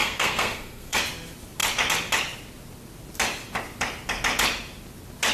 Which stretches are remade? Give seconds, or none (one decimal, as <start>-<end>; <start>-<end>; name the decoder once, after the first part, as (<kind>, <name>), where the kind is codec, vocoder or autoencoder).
0.0-1.0 (codec, SNAC)